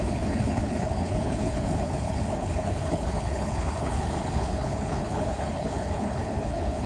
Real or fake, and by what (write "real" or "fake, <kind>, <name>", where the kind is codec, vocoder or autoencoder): fake, codec, HILCodec